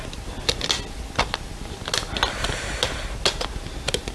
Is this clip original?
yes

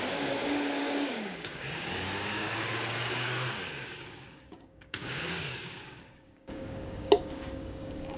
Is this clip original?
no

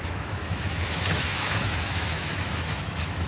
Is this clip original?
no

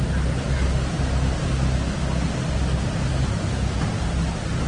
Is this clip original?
yes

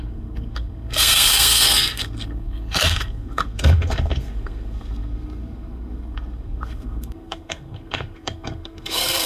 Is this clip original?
no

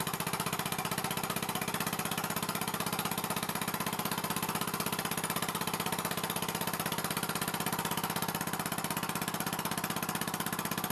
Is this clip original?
yes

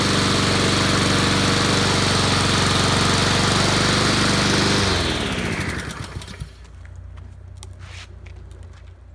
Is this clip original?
yes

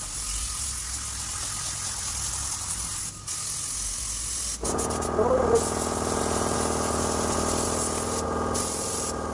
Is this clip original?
yes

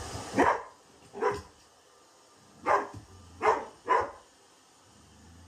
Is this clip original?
yes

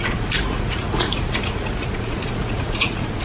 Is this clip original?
no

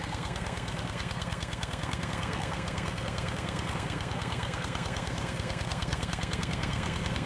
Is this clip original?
no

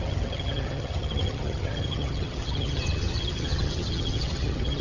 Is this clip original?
no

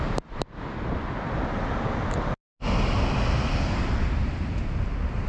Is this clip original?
yes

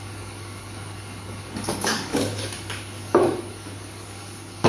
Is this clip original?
no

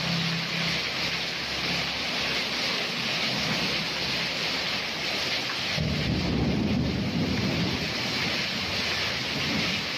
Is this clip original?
yes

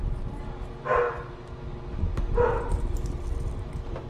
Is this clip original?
yes